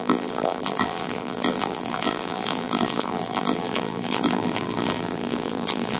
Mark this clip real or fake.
fake